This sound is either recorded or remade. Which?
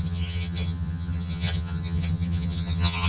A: remade